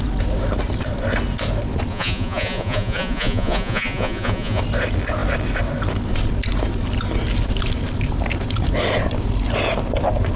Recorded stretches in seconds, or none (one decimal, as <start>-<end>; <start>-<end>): 0.0-1.9; 4.6-10.4